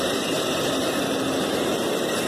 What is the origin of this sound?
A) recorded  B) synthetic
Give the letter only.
A